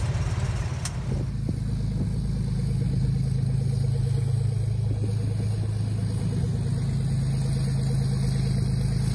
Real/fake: real